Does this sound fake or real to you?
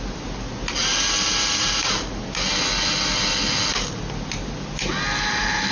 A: real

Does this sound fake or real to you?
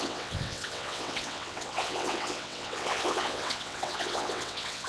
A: fake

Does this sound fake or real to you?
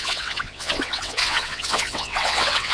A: fake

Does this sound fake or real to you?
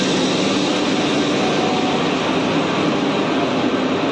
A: real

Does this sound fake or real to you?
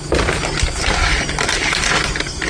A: real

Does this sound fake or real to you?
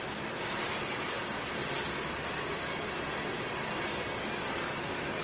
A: real